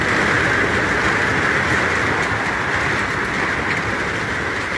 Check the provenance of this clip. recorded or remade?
recorded